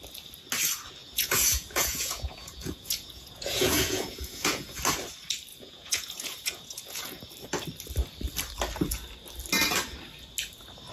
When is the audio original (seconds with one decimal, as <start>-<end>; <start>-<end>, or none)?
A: 0.0-1.0; 4.8-5.5; 7.3-10.9